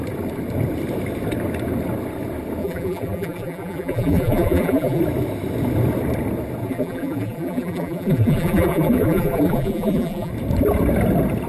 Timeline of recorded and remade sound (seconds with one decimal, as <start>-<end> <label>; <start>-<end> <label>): 0.0-2.6 recorded; 2.6-5.0 remade; 5.0-6.6 recorded; 6.6-10.3 remade; 10.3-11.5 recorded